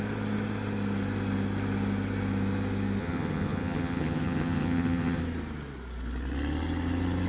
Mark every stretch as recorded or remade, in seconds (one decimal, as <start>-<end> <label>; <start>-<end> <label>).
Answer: 0.0-3.0 recorded; 3.0-5.2 remade; 5.2-7.3 recorded